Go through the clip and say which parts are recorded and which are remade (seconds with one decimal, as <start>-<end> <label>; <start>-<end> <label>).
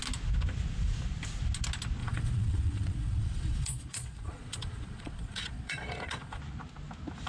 0.0-2.0 recorded; 2.0-6.4 remade; 6.4-7.3 recorded